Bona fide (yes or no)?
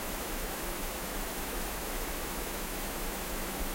no